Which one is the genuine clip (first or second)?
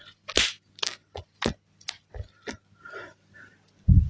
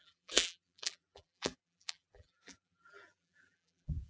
first